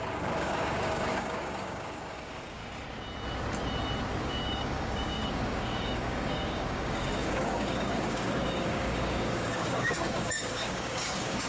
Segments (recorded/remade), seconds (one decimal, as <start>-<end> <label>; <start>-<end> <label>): 0.0-2.6 remade; 2.6-4.2 recorded; 4.2-11.5 remade